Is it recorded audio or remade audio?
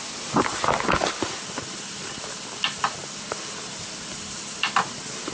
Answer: recorded